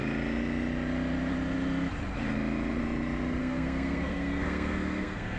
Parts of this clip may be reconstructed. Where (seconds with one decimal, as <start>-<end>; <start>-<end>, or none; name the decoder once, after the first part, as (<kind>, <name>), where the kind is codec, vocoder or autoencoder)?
3.4-5.4 (codec, SNAC)